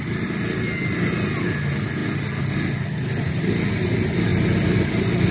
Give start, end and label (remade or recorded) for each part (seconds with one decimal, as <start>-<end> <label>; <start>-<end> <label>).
0.0-5.3 recorded